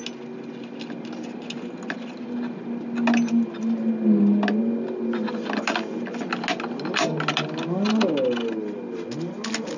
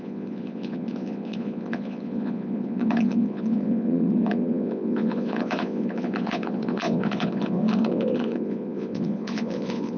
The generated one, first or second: second